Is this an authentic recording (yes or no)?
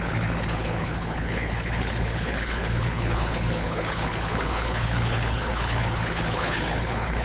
no